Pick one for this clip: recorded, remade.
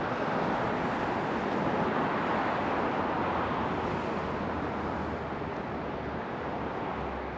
recorded